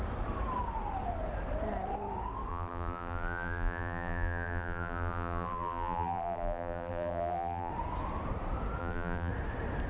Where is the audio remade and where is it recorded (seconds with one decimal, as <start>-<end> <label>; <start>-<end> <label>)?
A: 0.0-2.5 recorded; 2.5-7.7 remade; 7.7-8.8 recorded; 8.8-9.3 remade; 9.3-9.9 recorded